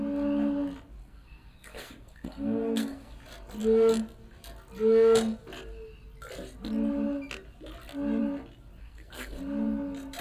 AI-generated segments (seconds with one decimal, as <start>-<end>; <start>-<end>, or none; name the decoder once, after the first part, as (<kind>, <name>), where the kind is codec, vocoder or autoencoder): 1.0-3.1 (codec, SNAC); 8.8-9.4